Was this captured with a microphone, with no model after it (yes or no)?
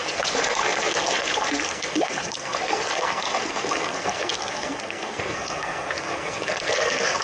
no